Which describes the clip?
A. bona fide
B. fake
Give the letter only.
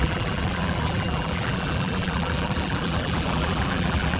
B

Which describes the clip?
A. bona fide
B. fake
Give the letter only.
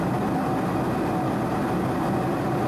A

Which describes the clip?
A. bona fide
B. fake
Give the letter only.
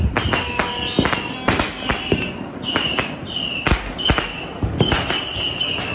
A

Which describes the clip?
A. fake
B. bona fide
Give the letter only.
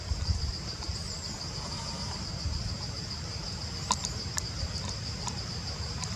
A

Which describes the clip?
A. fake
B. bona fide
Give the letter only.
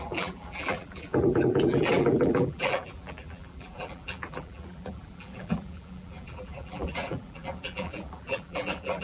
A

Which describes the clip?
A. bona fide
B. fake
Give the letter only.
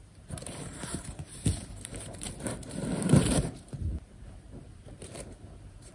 B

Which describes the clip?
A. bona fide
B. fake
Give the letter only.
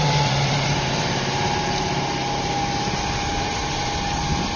B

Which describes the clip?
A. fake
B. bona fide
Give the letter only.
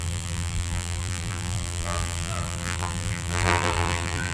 A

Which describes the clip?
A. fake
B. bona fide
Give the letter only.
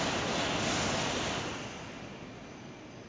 B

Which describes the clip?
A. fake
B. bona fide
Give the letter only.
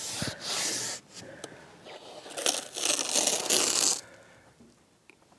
B